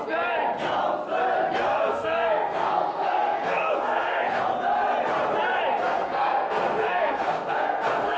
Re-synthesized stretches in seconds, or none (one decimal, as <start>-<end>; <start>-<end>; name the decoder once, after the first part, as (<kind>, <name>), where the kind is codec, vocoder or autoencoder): 1.7-4.4 (codec, SNAC); 5.8-8.2